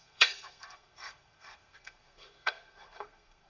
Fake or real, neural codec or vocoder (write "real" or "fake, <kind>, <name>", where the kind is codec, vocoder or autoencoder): fake, codec, SNAC